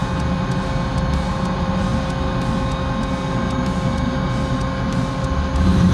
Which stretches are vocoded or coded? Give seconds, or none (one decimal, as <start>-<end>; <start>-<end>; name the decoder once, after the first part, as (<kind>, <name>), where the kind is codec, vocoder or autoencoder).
none